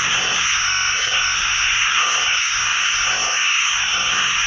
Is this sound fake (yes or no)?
yes